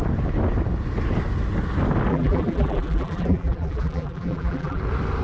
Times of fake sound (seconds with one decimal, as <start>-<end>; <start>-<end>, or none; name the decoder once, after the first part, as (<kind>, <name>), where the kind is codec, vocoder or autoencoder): 2.1-4.8 (vocoder, BigVGAN v2)

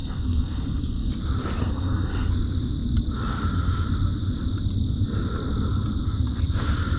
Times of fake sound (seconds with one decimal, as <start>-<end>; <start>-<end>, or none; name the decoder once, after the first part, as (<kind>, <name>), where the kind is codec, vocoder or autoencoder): 0.0-1.1 (codec, SNAC); 1.6-2.3

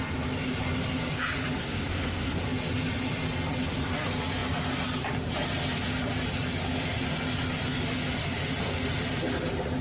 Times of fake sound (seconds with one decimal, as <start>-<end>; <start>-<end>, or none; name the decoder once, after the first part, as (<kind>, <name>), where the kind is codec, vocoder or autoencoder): 1.6-2.4 (codec, SNAC)

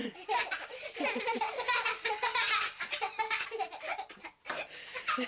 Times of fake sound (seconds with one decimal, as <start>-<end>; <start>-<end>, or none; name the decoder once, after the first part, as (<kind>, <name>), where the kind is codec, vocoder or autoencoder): 2.9-5.3 (vocoder, BigVGAN v2)

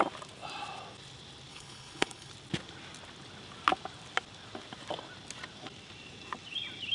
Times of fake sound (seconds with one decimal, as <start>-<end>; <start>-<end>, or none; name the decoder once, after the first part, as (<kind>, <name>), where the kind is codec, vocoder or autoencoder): 1.5-2.3 (codec, HILCodec)

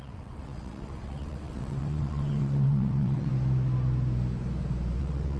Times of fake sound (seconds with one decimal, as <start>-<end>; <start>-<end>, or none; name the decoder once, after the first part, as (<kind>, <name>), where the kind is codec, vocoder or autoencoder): 0.0-3.3 (vocoder, WaveNeXt); 5.0-5.4

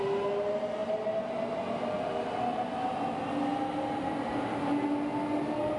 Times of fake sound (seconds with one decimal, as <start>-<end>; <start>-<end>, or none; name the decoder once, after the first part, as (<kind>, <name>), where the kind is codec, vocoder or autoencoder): none

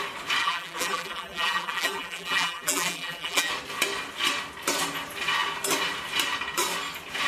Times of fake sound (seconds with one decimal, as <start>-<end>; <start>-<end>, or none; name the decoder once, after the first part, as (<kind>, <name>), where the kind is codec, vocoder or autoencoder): 0.4-3.5 (vocoder, BigVGAN v2)